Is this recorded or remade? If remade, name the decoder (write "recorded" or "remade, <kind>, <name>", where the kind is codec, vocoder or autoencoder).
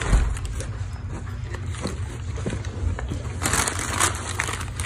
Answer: recorded